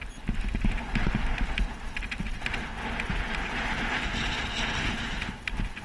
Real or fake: real